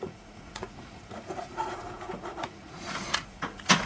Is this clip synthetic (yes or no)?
yes